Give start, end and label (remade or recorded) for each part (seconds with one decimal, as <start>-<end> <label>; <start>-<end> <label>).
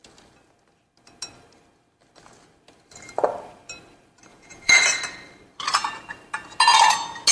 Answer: 0.0-4.3 recorded; 4.3-4.8 remade; 4.8-7.3 recorded